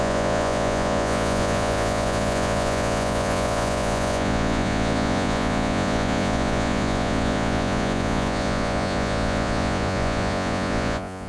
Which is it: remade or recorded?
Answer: remade